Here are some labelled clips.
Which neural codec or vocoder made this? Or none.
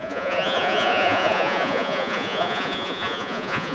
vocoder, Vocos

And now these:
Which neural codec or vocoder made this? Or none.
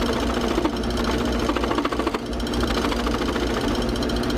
none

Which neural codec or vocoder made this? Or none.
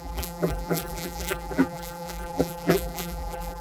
vocoder, BigVGAN v2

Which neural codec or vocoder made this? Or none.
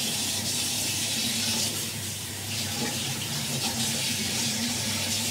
vocoder, BigVGAN v2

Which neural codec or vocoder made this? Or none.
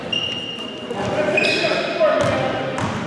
none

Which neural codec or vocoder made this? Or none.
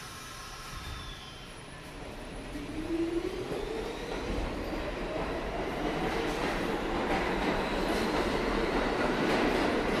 vocoder, BigVGAN v2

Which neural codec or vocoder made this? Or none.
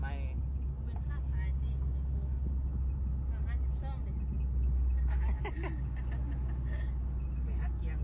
none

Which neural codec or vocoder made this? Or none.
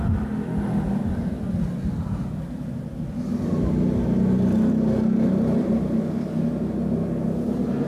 none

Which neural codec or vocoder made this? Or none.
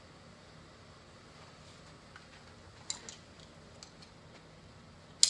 none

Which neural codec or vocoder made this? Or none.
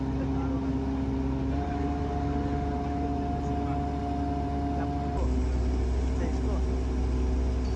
none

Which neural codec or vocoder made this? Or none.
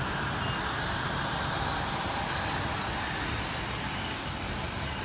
none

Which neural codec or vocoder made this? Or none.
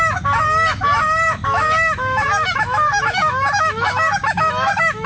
autoencoder, DAC-VAE